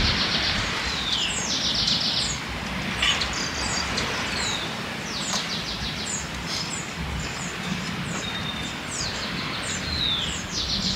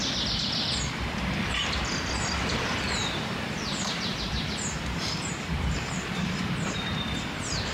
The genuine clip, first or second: first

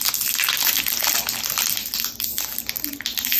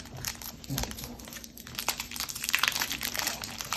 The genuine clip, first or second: first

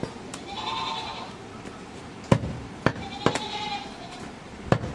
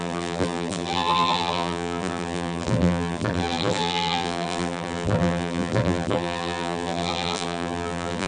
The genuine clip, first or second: first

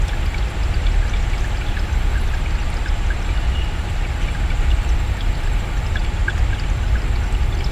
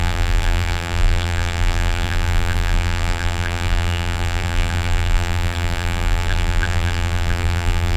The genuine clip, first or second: first